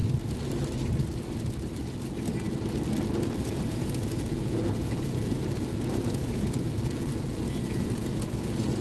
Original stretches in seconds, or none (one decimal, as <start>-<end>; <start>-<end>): 0.0-3.4